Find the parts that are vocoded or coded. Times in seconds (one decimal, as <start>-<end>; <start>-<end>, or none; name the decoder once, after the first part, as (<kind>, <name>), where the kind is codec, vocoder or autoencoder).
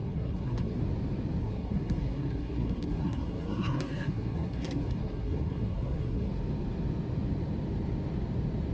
0.0-0.8 (codec, SNAC); 1.4-6.3